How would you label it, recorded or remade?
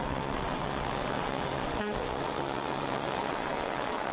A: remade